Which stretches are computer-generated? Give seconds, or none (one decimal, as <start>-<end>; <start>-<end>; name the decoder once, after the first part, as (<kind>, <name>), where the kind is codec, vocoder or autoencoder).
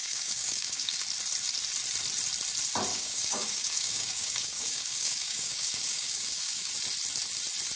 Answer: 0.0-1.0 (codec, DAC); 2.9-6.7